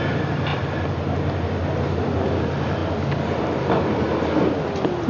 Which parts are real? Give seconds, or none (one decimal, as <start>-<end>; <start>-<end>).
0.0-5.1